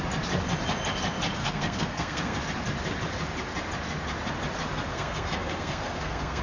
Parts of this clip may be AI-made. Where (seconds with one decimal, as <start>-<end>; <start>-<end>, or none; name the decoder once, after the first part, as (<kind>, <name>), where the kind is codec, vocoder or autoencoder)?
1.4-2.4 (codec, SNAC); 4.9-6.4